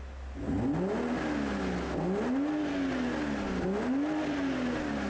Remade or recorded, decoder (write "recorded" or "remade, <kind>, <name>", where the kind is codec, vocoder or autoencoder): recorded